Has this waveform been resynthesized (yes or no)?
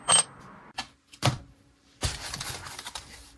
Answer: yes